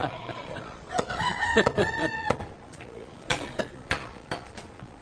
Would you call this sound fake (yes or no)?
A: yes